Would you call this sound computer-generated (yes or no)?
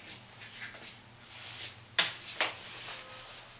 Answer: no